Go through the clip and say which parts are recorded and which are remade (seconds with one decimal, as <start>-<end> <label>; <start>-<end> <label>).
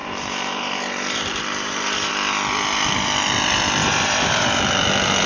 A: 0.0-2.1 remade; 2.1-3.8 recorded; 3.8-4.6 remade; 4.6-5.3 recorded